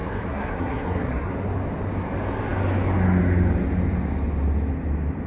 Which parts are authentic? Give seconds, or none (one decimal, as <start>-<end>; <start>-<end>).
1.3-5.3

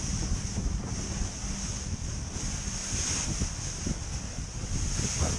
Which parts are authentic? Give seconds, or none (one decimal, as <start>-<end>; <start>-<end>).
0.0-5.4

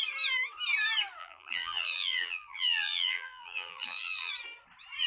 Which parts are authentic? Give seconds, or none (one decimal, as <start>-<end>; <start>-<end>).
0.0-1.2; 4.3-5.1

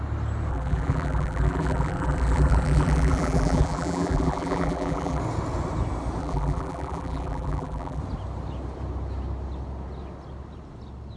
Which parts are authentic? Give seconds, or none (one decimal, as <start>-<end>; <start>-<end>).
0.0-0.5; 5.2-6.2; 8.0-11.2

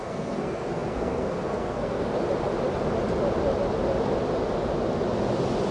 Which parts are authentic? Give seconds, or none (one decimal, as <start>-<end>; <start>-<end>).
2.1-5.7